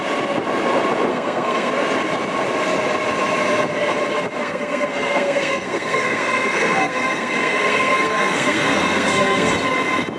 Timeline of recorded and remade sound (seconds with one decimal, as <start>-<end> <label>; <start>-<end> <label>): 0.0-1.1 recorded; 1.1-1.7 remade; 1.7-4.4 recorded; 4.4-9.5 remade; 9.5-10.2 recorded